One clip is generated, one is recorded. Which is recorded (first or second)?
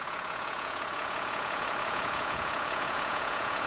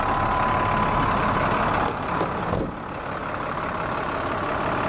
second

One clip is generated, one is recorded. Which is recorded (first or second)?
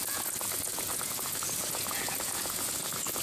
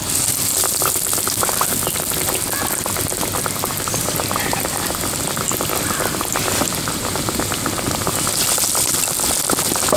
second